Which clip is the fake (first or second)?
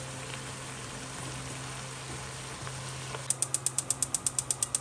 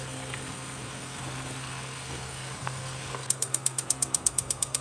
second